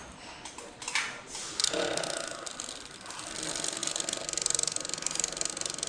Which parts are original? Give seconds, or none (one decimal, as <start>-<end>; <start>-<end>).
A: 0.0-5.9